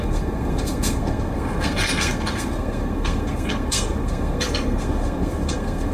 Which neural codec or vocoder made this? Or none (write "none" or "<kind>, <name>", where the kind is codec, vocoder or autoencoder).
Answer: codec, SNAC